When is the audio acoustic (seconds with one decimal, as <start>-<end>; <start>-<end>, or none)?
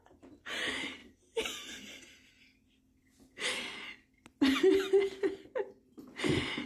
0.0-6.7